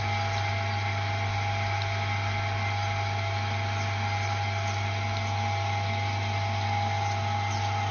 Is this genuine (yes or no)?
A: yes